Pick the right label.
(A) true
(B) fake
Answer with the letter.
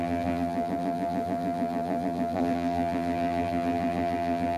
B